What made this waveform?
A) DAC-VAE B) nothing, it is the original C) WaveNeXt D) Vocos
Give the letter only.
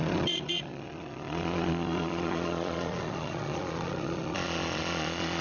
D